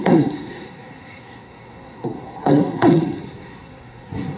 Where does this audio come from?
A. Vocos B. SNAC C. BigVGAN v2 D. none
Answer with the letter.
B